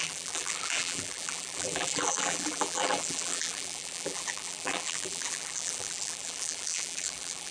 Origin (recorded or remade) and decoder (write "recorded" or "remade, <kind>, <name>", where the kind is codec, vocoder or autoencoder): remade, vocoder, BigVGAN v2